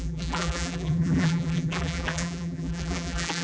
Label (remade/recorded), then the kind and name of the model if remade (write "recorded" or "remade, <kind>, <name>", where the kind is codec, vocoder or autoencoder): remade, vocoder, BigVGAN v2